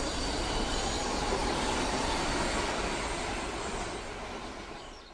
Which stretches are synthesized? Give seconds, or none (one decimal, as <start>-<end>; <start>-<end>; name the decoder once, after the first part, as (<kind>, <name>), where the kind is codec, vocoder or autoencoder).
0.0-5.1 (vocoder, BigVGAN v2)